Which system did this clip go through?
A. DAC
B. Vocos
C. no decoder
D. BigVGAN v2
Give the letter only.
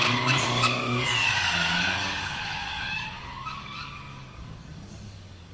A